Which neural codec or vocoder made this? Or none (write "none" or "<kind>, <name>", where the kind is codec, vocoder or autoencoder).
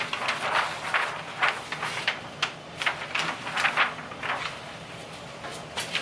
none